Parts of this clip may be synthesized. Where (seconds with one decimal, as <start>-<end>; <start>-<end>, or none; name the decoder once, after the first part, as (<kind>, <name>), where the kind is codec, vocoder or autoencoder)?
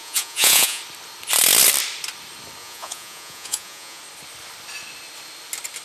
0.0-0.8 (vocoder, Vocos); 2.6-4.0